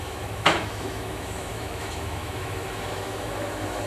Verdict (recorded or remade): remade